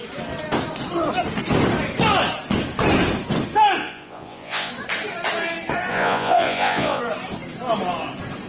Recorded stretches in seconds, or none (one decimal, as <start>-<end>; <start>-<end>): 0.0-3.8; 4.7-5.9; 7.0-8.5